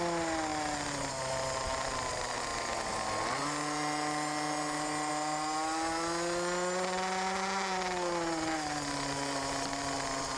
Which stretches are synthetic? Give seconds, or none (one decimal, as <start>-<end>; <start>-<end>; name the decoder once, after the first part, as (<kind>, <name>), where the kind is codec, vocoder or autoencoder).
none